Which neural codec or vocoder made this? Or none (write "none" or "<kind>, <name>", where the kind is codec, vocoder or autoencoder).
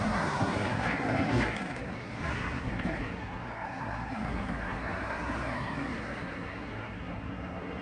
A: codec, SNAC